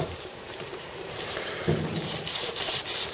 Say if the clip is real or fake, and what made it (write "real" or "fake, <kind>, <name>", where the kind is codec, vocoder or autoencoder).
fake, vocoder, BigVGAN v2